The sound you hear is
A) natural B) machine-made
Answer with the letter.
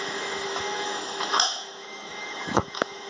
B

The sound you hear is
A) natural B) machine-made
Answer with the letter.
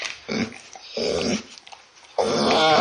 A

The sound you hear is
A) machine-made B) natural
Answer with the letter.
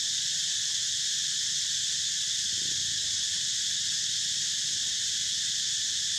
B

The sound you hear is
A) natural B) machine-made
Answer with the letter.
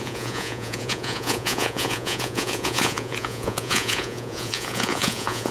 B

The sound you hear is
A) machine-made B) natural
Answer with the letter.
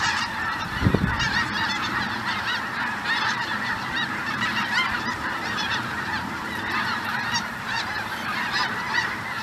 A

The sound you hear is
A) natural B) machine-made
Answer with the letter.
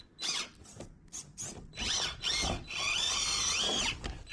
A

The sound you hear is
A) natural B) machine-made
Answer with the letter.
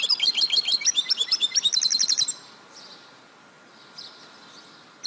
A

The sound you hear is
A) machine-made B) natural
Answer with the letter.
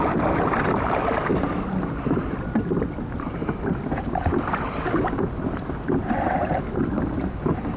B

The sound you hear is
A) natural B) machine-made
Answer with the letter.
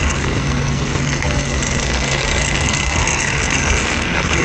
B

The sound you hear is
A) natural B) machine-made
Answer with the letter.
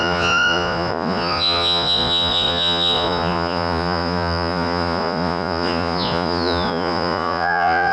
B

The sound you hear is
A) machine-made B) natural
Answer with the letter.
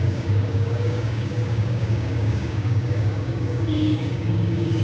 A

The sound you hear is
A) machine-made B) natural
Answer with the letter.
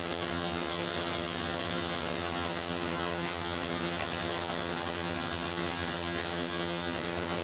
A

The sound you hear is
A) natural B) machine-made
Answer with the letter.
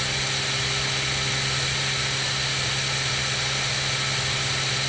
A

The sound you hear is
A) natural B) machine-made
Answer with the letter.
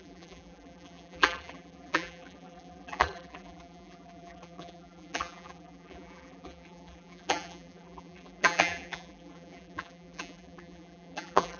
B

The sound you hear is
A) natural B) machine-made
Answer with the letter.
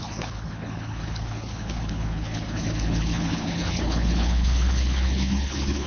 B